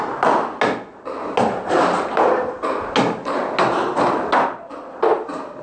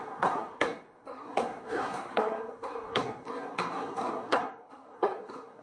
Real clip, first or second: first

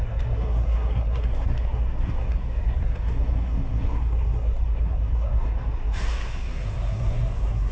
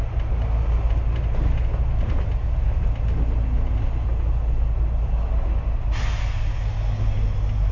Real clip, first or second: second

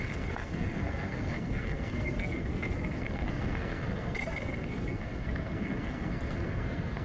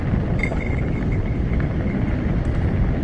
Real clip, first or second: second